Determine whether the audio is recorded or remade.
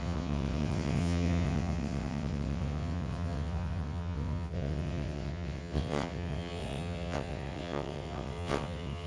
remade